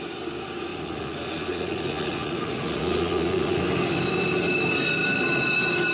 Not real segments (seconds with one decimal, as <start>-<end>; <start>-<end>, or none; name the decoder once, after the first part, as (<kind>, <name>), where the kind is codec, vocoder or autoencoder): 0.7-3.6 (vocoder, Vocos)